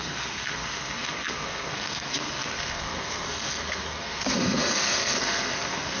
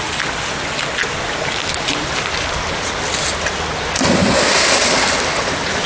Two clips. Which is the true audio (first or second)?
second